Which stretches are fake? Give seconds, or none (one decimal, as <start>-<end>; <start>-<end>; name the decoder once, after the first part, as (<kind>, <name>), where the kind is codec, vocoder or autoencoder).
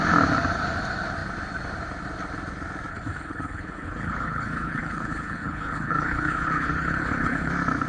2.9-7.5 (codec, HILCodec)